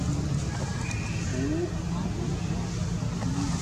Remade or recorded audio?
recorded